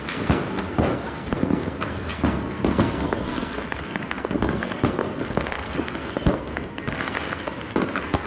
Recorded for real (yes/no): no